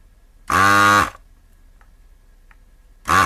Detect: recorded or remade recorded